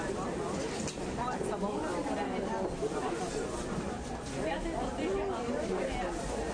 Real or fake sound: real